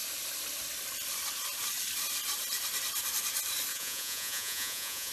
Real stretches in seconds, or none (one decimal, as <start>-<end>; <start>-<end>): 0.0-3.7